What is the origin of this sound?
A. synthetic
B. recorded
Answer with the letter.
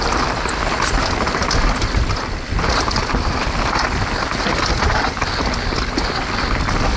B